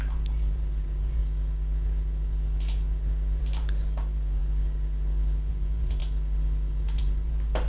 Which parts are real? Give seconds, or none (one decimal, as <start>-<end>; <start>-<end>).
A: 1.2-3.4; 4.4-5.5; 6.0-7.0